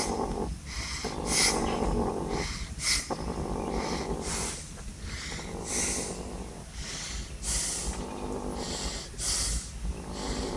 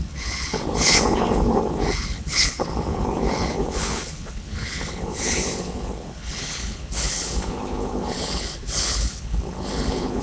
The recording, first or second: first